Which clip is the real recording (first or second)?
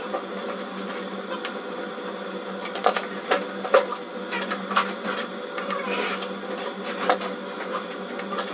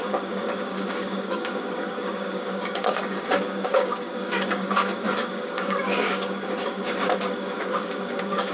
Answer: first